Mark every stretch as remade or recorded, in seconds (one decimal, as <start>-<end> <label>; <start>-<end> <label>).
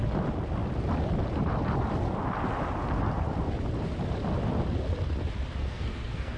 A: 0.0-5.6 recorded; 5.6-6.4 remade